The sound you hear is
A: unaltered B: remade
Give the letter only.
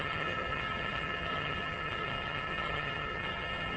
B